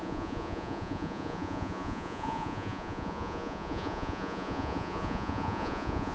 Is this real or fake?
fake